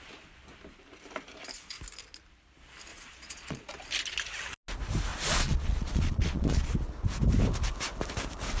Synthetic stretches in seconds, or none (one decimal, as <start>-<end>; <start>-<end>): 2.9-3.7; 5.1-6.7